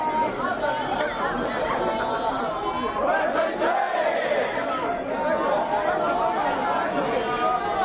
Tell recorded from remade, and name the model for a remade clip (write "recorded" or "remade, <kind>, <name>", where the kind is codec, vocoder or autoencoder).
recorded